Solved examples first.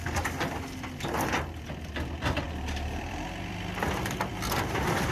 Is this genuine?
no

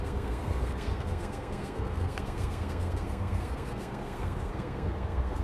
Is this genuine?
no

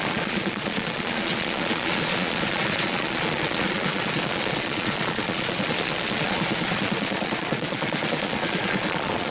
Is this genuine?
no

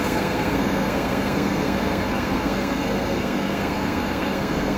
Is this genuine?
no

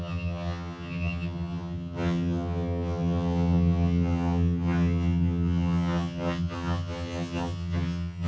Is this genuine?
no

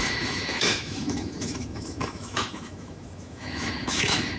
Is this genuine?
no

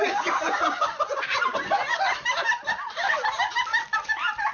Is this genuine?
yes